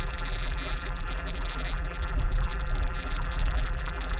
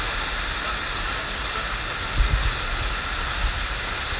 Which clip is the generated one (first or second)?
first